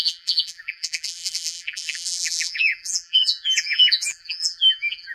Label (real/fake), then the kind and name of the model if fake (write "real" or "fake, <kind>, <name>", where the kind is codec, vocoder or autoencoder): fake, vocoder, BigVGAN v2